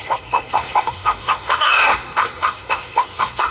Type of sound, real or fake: fake